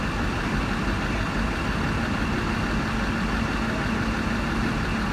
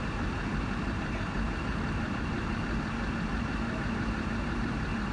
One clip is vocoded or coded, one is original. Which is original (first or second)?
first